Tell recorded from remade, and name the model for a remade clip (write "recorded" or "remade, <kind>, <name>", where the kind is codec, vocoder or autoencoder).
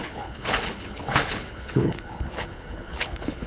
remade, codec, HILCodec